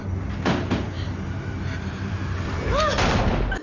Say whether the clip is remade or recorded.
recorded